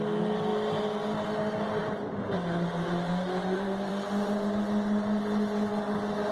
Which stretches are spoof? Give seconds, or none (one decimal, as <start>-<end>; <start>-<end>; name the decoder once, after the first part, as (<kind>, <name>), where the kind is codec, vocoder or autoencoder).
1.8-3.9 (vocoder, BigVGAN v2)